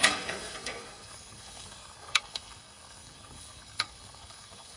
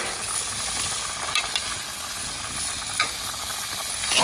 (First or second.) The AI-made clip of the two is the first